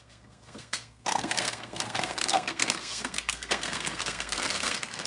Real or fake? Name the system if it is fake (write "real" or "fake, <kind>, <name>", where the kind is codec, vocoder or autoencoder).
fake, codec, SNAC